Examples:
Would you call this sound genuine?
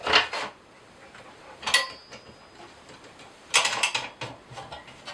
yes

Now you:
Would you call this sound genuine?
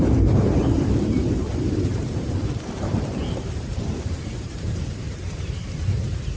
no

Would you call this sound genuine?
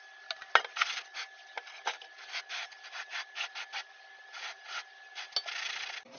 yes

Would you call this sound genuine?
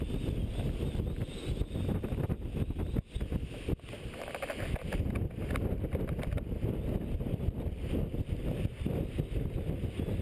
yes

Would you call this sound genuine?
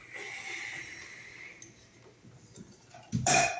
no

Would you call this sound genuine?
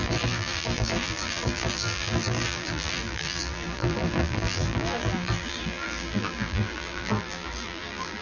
no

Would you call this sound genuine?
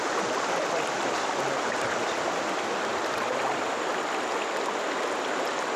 no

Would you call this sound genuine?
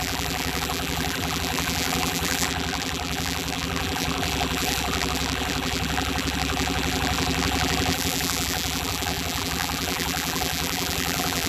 no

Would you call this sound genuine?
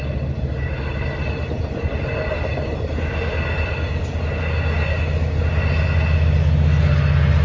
yes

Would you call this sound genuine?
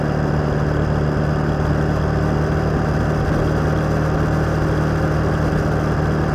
yes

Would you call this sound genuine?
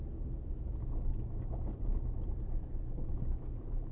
yes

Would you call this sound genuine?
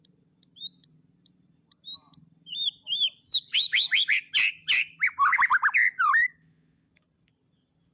no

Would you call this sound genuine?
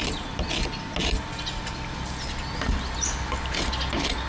yes